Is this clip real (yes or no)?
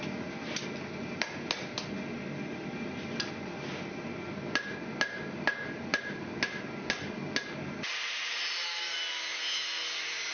yes